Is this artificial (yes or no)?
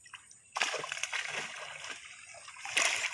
no